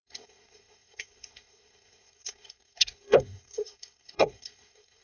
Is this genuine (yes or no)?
no